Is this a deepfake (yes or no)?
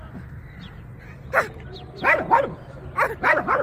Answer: no